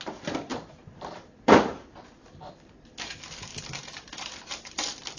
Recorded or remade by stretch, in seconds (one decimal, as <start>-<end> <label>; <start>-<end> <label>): 0.0-0.5 recorded; 0.5-2.7 remade; 2.7-3.5 recorded; 3.5-5.2 remade